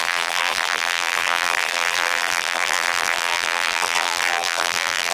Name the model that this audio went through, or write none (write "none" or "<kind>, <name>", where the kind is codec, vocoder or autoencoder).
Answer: vocoder, BigVGAN v2